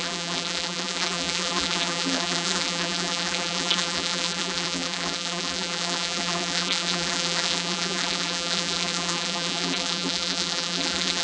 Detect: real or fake fake